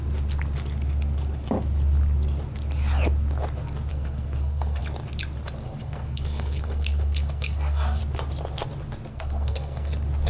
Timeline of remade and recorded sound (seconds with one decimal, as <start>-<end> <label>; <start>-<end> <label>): 0.0-3.9 recorded; 3.9-4.8 remade; 4.8-5.8 recorded; 5.8-8.0 remade; 8.0-9.1 recorded; 9.1-9.9 remade; 9.9-10.3 recorded